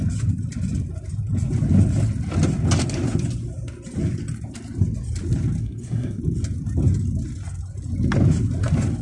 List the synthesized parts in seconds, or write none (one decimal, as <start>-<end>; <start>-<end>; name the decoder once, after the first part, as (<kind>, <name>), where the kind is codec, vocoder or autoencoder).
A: 5.6-6.2 (codec, SNAC)